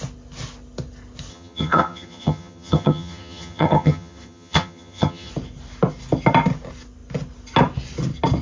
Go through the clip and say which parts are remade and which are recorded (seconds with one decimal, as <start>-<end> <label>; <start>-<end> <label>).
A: 0.0-1.3 recorded; 1.3-5.3 remade; 5.3-8.4 recorded

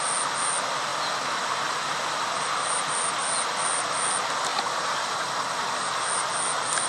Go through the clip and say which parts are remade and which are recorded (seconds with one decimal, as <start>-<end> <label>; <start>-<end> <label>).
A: 0.0-4.5 recorded; 4.5-5.3 remade; 5.3-6.9 recorded

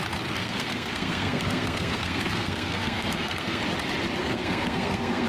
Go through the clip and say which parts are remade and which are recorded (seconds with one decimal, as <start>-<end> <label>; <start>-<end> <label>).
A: 0.0-0.4 recorded; 0.4-3.6 remade; 3.6-4.2 recorded; 4.2-5.3 remade

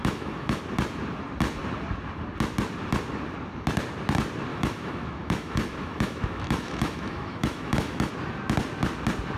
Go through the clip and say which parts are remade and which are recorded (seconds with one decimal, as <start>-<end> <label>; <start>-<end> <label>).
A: 0.0-0.6 remade; 0.6-4.5 recorded; 4.5-8.1 remade; 8.1-9.4 recorded

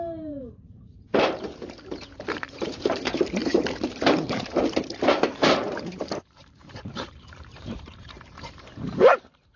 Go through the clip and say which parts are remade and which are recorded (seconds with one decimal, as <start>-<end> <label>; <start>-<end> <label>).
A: 0.0-9.6 remade

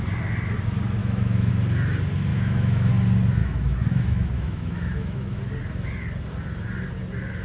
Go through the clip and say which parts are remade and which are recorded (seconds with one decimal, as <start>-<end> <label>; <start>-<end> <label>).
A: 0.0-1.0 recorded; 1.0-1.5 remade; 1.5-2.3 recorded; 2.3-2.9 remade; 2.9-3.4 recorded; 3.4-5.4 remade; 5.4-7.4 recorded

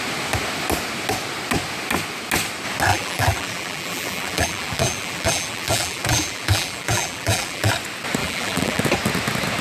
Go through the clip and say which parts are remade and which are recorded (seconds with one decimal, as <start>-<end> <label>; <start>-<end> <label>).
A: 0.0-2.9 recorded; 2.9-7.7 remade; 7.7-8.2 recorded; 8.2-8.8 remade; 8.8-9.6 recorded

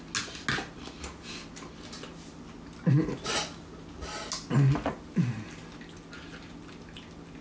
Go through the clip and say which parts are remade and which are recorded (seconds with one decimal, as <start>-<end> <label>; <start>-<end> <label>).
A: 0.0-7.4 recorded